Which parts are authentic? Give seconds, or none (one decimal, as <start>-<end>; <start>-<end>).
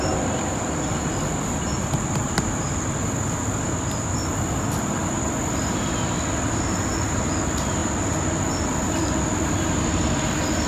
0.0-10.7